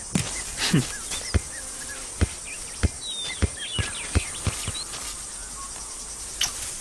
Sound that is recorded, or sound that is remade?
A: recorded